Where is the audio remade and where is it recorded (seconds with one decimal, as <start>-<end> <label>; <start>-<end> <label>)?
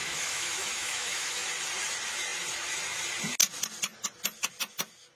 0.0-1.5 remade; 1.5-5.2 recorded